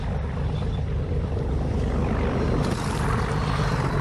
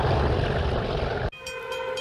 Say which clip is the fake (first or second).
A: first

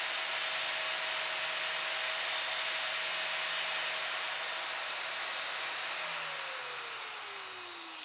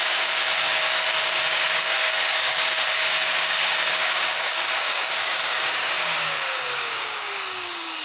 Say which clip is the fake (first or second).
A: second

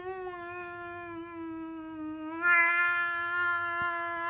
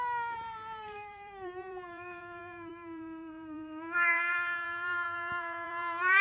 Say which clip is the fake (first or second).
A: second